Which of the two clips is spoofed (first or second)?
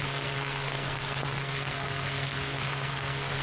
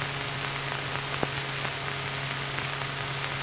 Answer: first